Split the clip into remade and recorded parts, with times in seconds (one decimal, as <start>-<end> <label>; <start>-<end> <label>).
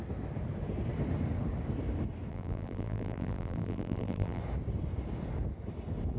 0.0-2.3 recorded; 2.3-4.4 remade; 4.4-6.2 recorded